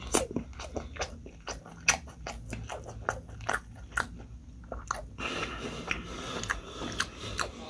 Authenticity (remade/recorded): recorded